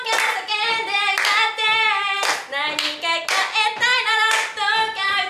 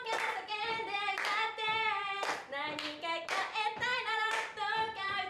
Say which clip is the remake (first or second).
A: second